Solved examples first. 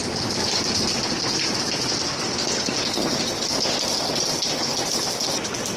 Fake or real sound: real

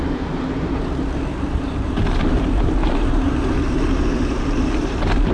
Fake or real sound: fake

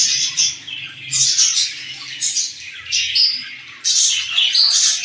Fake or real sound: real